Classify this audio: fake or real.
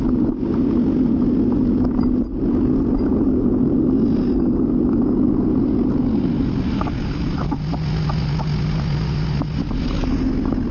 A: real